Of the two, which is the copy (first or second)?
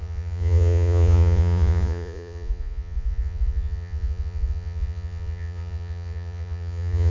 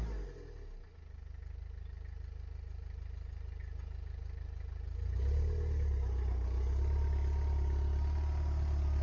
first